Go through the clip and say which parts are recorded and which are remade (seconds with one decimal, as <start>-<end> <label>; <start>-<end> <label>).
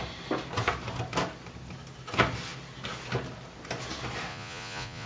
0.0-4.3 recorded; 4.3-5.1 remade